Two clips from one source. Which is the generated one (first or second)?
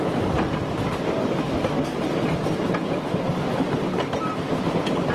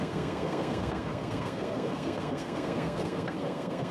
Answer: second